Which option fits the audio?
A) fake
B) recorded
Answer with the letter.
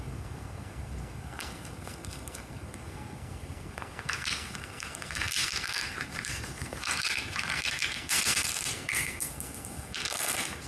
A